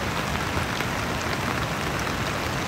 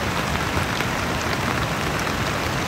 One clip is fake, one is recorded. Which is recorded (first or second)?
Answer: first